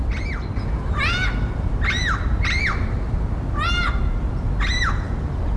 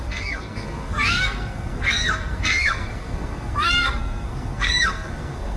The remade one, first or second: second